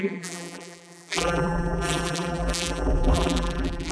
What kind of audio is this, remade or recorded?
remade